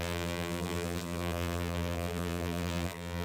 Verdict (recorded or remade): remade